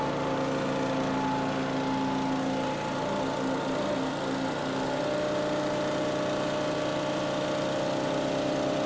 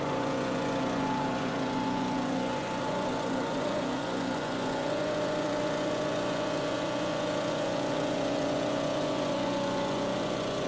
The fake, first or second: second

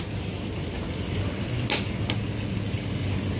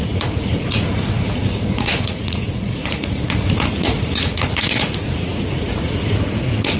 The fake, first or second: second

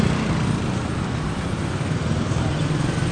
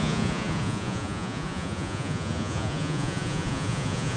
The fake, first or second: second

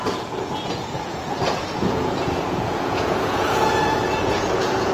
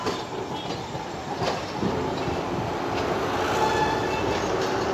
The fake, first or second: first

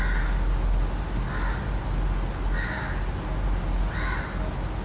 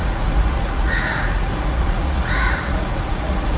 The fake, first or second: second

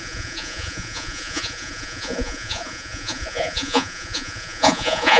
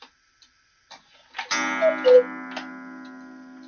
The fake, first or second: first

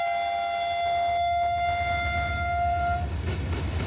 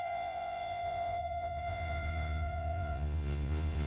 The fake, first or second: second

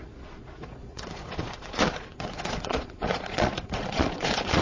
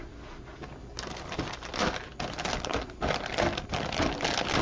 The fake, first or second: first